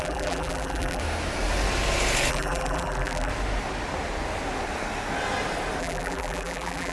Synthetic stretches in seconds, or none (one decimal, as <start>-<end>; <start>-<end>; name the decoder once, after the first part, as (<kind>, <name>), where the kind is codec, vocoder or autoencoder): 0.0-1.0 (vocoder, BigVGAN v2); 2.3-3.3; 5.8-6.9